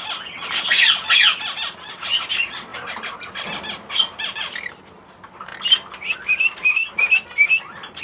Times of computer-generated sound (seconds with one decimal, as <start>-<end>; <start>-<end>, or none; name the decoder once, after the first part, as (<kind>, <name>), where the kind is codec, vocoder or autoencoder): none